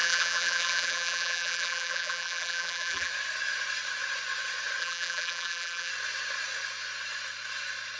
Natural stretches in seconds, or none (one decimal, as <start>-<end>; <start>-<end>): 3.1-4.8; 5.9-8.0